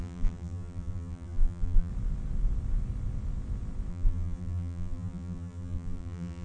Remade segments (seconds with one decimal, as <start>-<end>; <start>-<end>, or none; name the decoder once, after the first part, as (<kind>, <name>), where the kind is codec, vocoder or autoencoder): 0.0-1.9 (vocoder, BigVGAN v2); 3.9-6.4